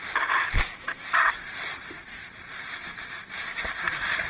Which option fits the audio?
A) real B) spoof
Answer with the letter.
B